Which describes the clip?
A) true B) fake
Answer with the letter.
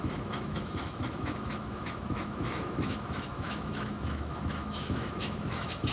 B